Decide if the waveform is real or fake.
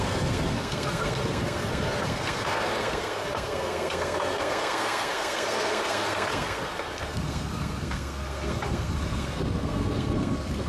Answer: fake